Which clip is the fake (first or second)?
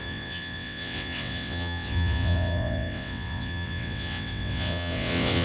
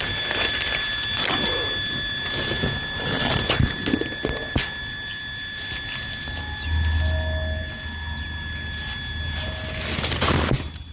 first